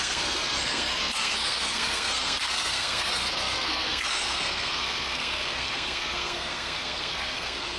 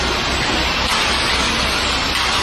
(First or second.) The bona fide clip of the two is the second